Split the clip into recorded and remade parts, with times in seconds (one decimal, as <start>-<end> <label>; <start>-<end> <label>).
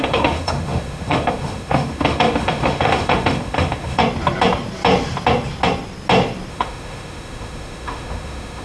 0.0-4.0 remade; 4.0-6.5 recorded; 6.5-8.6 remade